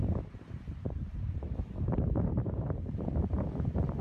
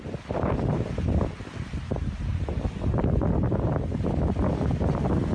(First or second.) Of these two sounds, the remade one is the first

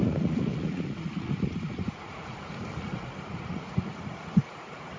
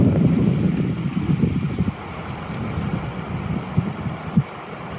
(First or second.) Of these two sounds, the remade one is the first